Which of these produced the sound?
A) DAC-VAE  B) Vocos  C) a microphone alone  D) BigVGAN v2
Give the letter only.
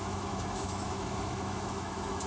A